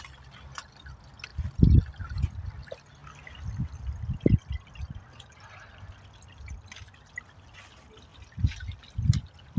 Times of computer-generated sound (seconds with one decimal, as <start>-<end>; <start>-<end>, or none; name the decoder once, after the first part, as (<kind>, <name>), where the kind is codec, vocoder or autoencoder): none